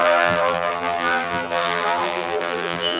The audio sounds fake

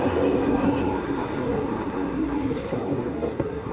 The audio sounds fake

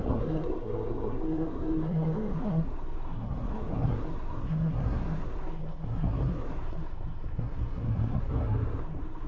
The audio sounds fake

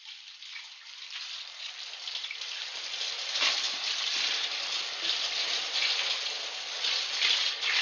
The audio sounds fake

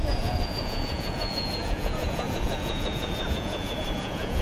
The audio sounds fake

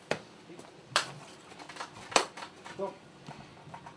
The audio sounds real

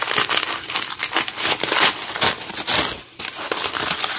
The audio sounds real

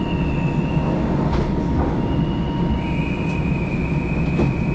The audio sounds real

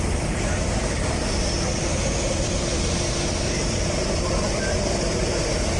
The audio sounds fake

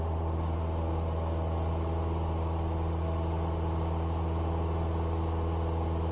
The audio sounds real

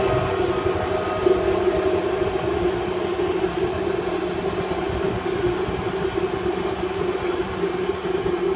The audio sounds real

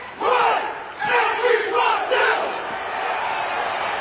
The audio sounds real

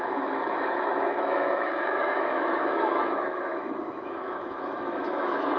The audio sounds fake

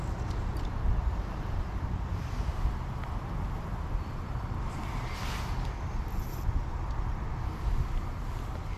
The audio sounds real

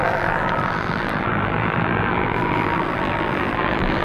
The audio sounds fake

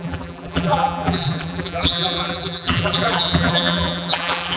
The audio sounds fake